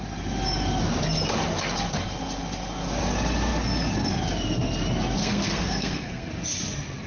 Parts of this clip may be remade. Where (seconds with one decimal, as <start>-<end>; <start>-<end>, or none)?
5.2-6.3